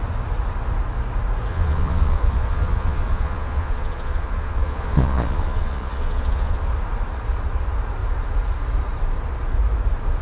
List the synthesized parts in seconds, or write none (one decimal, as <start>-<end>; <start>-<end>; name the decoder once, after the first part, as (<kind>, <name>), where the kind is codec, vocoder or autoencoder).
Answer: 1.5-6.6 (vocoder, Vocos)